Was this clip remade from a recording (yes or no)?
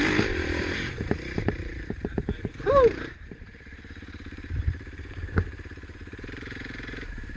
yes